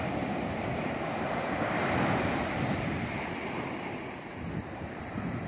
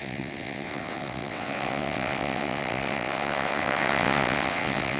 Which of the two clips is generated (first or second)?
second